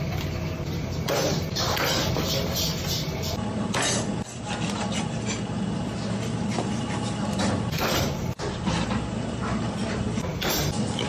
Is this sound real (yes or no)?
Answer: yes